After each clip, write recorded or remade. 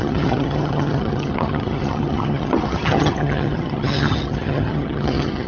remade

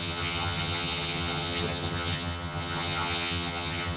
remade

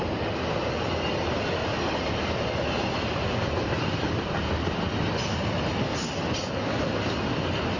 recorded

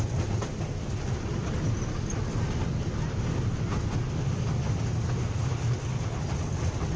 recorded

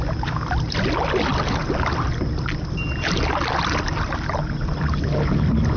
recorded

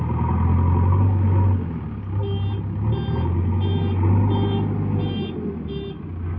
recorded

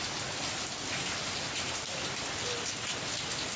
recorded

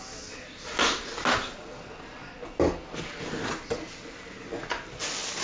recorded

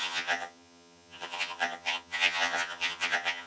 remade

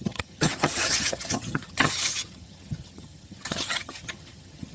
remade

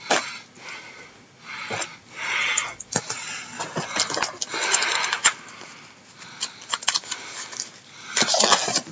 recorded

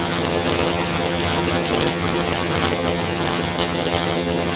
remade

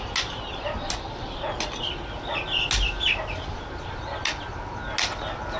recorded